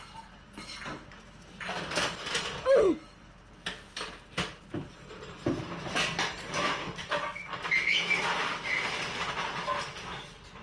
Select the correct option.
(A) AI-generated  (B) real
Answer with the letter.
B